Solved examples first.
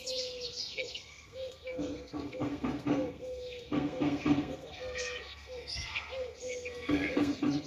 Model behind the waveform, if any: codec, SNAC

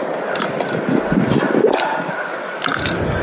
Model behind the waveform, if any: none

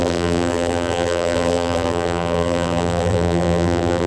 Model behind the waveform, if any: vocoder, BigVGAN v2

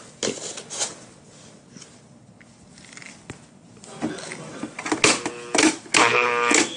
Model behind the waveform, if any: none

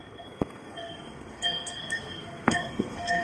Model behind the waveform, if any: codec, SNAC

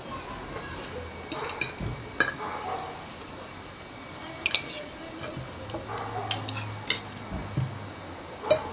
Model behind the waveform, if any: none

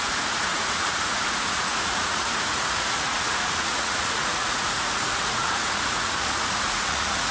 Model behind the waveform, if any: vocoder, Vocos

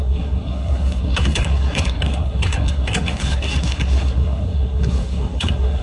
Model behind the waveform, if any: codec, SNAC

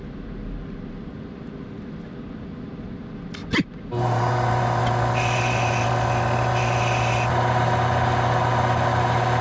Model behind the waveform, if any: none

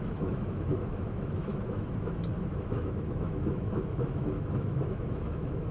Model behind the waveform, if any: autoencoder, DAC-VAE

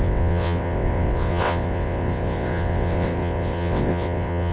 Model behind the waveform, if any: vocoder, WaveNeXt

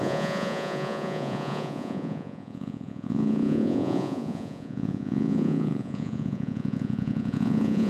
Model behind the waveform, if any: vocoder, Vocos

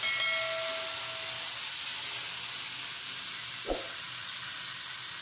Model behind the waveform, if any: none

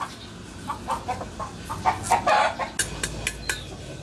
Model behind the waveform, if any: none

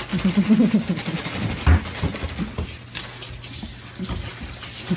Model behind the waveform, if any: none